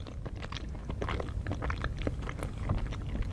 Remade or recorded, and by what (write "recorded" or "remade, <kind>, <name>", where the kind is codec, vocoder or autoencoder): recorded